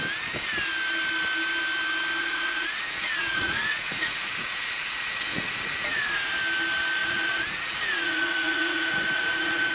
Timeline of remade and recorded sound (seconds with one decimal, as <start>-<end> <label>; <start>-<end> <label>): 0.0-2.2 recorded; 2.2-6.3 remade; 6.3-7.0 recorded; 7.0-9.7 remade